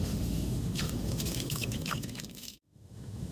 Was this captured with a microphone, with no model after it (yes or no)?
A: no